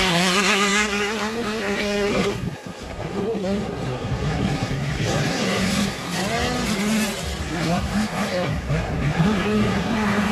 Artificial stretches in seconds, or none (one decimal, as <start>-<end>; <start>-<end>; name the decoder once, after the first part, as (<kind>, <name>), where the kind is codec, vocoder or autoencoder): 0.0-6.2 (codec, SNAC); 7.4-10.3